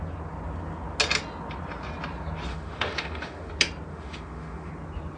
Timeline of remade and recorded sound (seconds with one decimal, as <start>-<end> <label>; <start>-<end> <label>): 0.0-2.5 recorded; 2.5-3.5 remade; 3.5-3.9 recorded; 3.9-4.7 remade; 4.7-5.2 recorded